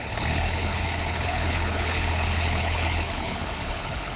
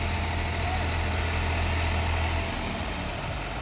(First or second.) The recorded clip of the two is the second